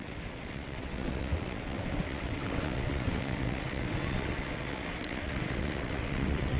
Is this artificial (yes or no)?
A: yes